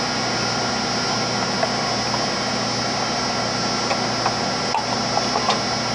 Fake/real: real